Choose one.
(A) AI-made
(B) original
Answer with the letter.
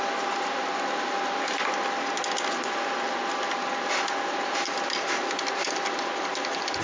B